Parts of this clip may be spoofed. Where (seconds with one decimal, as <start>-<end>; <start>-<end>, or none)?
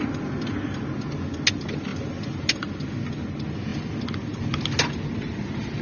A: none